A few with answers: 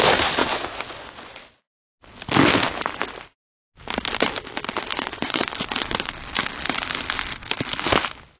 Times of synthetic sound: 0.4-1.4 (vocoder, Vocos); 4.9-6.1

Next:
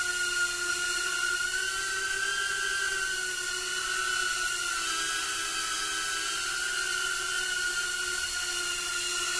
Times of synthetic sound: none

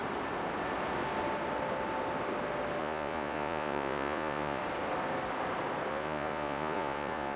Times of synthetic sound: 2.8-4.6 (vocoder, Vocos); 5.9-7.4

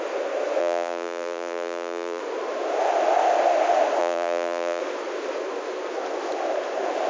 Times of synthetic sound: 0.6-2.2 (vocoder, BigVGAN v2); 4.0-4.8

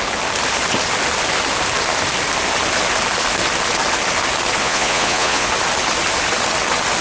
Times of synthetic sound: 4.6-5.5 (vocoder, Vocos)

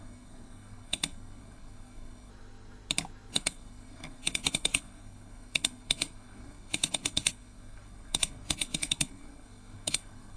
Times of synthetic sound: 0.0-2.3 (codec, SNAC); 3.3-10.4